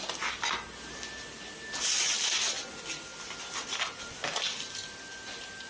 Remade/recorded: recorded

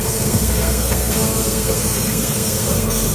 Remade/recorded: remade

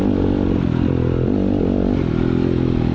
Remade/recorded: recorded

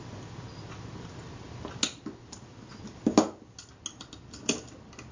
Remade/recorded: recorded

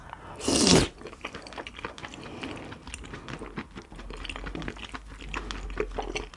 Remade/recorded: recorded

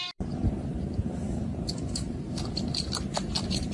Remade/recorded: remade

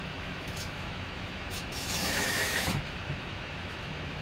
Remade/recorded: remade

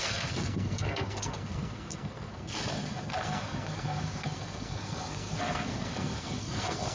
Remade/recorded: remade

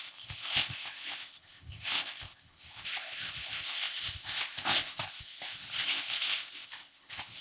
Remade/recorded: remade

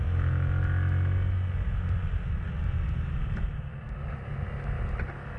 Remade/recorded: recorded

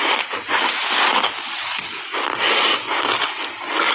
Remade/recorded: recorded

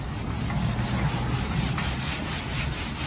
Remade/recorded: recorded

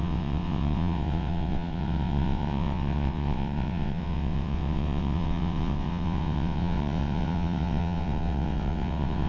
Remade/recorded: remade